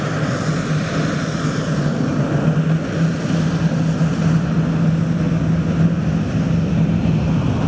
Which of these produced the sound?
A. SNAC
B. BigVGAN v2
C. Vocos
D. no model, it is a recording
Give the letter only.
D